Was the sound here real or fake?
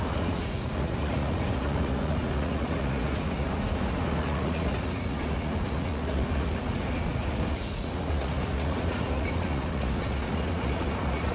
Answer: fake